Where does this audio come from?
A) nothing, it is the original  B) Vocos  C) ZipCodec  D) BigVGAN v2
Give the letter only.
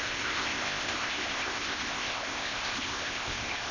C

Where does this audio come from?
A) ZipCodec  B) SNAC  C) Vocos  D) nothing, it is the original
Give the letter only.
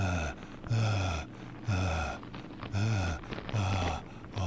D